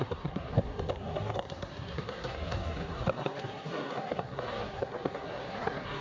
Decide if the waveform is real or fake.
fake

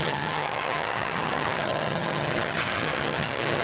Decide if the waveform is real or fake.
fake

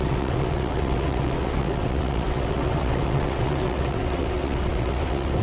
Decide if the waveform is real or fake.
fake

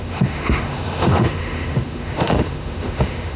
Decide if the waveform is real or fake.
fake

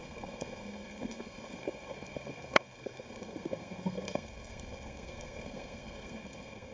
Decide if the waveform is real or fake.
fake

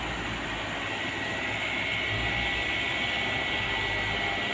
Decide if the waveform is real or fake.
real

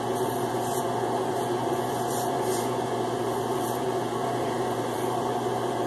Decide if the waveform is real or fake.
fake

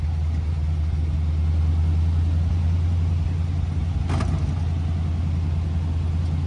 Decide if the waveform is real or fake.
real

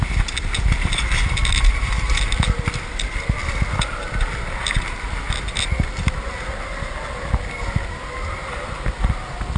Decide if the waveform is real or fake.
real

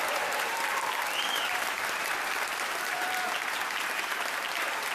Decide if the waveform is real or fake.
fake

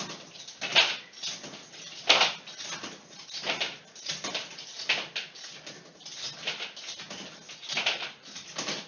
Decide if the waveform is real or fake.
real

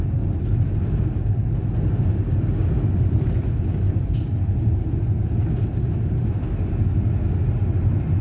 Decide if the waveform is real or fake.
real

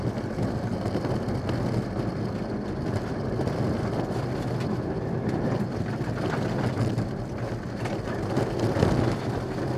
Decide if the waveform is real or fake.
real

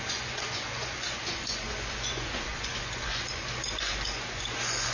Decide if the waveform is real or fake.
fake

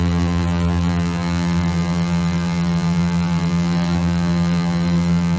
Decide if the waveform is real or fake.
fake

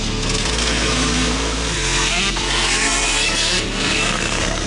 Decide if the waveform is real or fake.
fake